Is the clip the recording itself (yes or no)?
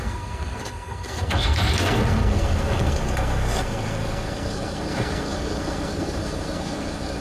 no